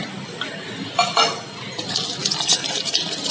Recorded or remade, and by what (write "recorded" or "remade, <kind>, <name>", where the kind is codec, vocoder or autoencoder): recorded